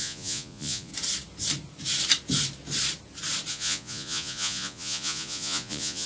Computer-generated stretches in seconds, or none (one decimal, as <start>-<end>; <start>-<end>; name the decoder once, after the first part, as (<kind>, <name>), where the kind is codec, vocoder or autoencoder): 0.0-0.9 (vocoder, Vocos); 3.5-6.1